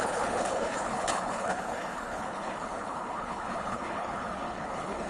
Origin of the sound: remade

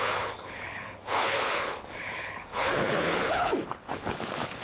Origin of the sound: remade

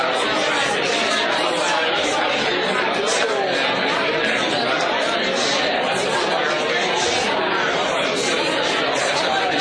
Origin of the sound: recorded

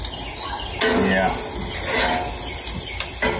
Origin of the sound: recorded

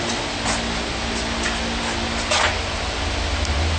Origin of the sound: recorded